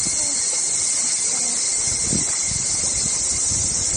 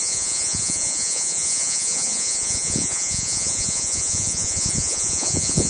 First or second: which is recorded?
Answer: first